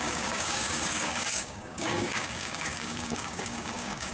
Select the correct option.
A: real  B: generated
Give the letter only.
B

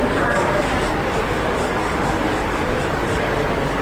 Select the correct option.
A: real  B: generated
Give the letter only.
B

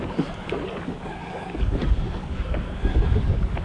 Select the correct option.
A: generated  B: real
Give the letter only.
A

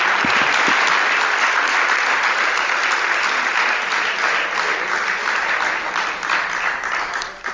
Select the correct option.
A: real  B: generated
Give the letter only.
A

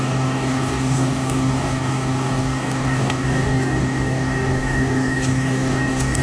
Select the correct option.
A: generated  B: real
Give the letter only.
A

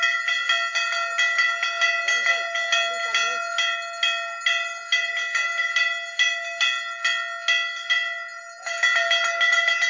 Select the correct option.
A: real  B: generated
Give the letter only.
A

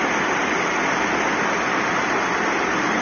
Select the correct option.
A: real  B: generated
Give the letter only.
A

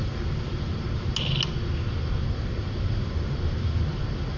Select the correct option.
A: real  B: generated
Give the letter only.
A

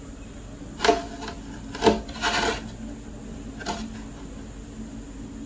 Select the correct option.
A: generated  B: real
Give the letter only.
B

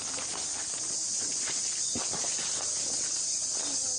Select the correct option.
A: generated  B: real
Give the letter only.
B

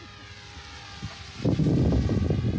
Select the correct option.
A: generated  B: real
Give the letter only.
B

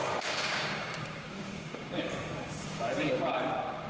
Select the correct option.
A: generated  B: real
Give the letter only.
A